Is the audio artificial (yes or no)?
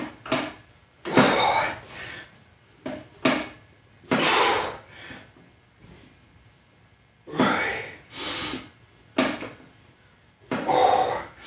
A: no